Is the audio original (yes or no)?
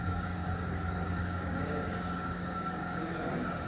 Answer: no